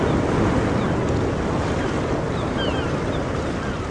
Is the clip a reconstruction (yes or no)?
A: no